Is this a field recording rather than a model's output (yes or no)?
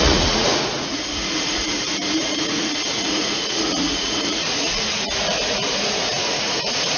no